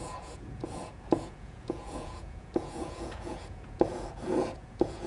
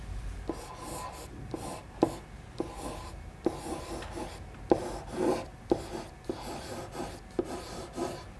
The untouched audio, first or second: second